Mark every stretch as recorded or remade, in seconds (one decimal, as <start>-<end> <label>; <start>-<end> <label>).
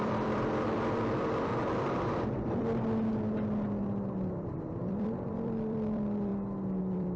0.0-1.5 remade; 1.5-4.3 recorded; 4.3-6.3 remade; 6.3-6.8 recorded; 6.8-7.2 remade